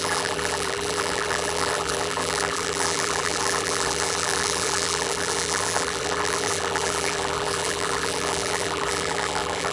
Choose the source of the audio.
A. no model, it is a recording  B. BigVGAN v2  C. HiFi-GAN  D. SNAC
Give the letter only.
B